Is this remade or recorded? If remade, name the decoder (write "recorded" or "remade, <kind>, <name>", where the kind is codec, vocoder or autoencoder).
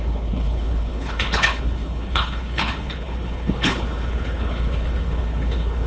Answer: remade, codec, HILCodec